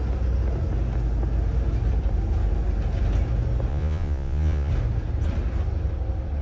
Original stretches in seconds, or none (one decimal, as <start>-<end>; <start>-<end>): 0.0-3.7; 4.7-6.4